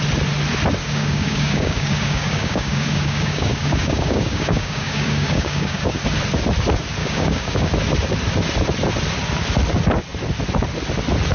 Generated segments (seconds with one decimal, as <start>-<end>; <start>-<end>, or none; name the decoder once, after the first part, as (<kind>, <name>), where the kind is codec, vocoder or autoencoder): 0.8-6.0 (codec, DAC); 7.0-7.7